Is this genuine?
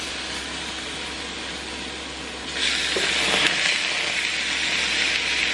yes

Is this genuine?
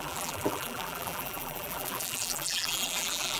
no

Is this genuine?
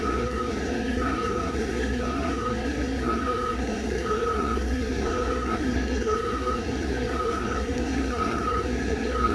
no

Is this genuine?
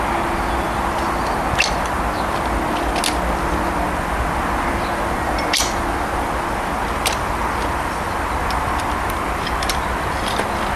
yes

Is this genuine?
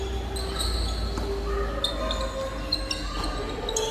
yes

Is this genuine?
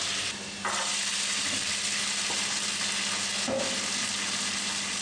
yes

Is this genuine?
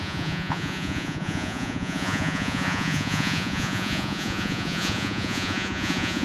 no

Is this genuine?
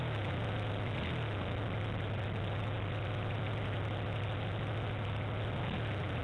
yes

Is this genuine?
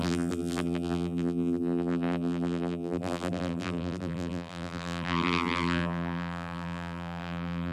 no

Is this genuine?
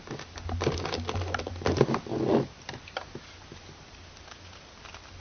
yes